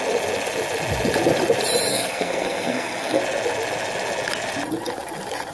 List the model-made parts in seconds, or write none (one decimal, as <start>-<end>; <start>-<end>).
1.9-3.2